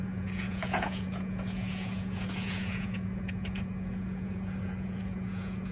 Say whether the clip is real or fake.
fake